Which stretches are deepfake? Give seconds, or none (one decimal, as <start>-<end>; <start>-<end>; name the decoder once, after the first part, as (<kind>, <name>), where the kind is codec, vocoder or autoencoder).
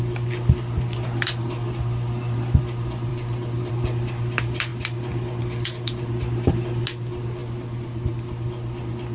3.1-3.7 (vocoder, BigVGAN v2); 4.7-6.5; 7.4-8.1